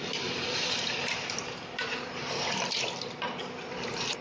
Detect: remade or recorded remade